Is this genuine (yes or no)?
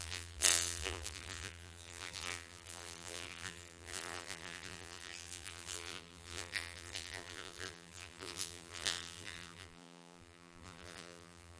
no